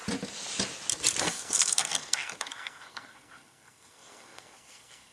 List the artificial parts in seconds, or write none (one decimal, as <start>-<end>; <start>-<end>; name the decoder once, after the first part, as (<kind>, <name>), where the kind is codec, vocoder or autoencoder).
1.2-5.1 (codec, SNAC)